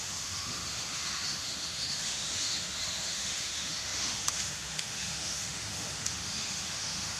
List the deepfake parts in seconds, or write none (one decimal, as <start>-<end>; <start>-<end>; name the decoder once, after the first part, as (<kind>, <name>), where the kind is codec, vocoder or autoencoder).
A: 0.0-7.2 (autoencoder, DAC-VAE)